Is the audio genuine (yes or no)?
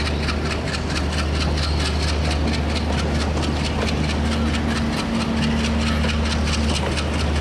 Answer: yes